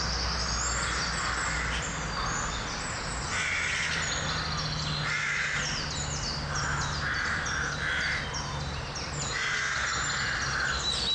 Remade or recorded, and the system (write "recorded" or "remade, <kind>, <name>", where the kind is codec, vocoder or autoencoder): recorded